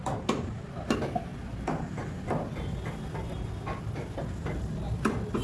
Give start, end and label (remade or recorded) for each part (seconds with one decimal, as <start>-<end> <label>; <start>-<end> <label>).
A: 0.0-5.4 recorded